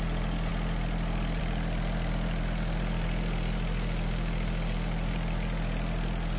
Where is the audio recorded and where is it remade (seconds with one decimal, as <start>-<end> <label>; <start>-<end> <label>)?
0.0-6.4 recorded